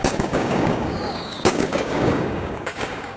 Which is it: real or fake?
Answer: fake